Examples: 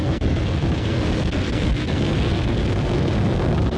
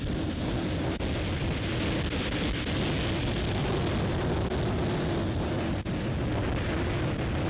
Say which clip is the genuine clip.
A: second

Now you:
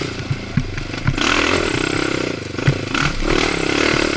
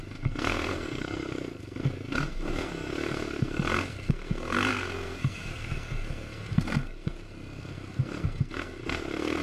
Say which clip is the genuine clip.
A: first